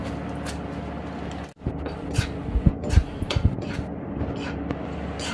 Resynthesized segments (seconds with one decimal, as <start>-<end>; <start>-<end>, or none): 3.0-3.7